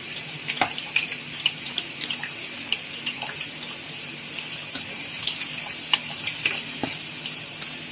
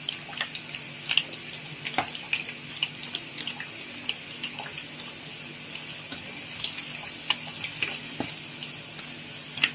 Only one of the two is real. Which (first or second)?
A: second